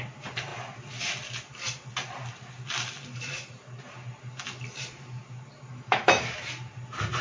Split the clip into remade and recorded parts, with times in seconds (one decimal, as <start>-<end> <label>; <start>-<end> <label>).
0.0-5.7 recorded; 5.7-6.4 remade; 6.4-7.2 recorded